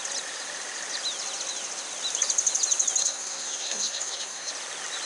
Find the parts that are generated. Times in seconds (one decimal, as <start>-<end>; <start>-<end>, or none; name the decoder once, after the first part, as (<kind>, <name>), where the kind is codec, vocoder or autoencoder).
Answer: 3.0-4.5 (codec, SNAC)